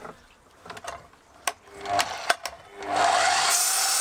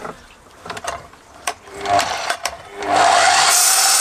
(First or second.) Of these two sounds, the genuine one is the first